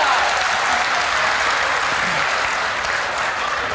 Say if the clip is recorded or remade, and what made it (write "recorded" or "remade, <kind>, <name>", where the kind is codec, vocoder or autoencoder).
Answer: recorded